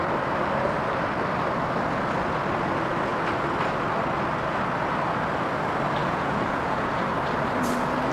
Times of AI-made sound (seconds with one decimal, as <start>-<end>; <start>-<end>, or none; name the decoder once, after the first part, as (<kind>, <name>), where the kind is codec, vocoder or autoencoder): 6.0-7.0 (vocoder, Vocos)